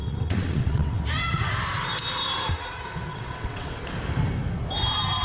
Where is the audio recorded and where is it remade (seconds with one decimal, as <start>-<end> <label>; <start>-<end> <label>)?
0.0-1.0 remade; 1.0-3.1 recorded; 3.1-3.8 remade; 3.8-5.2 recorded